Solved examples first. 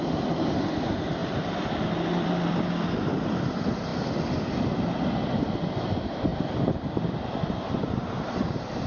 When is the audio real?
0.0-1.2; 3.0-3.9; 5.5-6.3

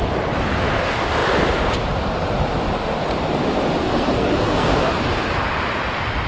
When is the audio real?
0.0-3.8; 4.9-6.3

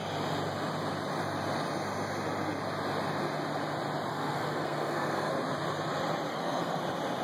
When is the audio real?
0.0-4.1; 5.3-6.3; 6.8-7.2

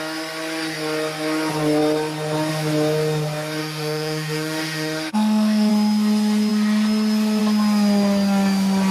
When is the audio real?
0.0-3.6; 5.7-8.9

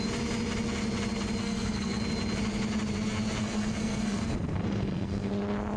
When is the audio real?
0.0-1.4; 2.0-3.4; 5.3-5.8